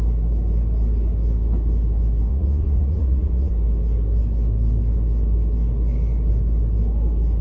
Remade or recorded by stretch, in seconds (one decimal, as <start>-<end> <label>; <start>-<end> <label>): 0.0-2.3 recorded; 2.3-3.5 remade; 3.5-7.4 recorded